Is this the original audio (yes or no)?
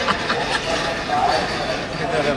yes